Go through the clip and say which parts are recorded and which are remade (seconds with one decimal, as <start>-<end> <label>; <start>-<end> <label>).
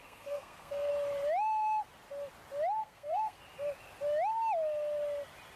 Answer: 0.0-0.9 remade; 0.9-2.8 recorded; 2.8-3.4 remade; 3.4-5.6 recorded